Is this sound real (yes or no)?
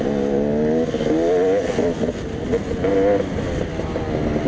yes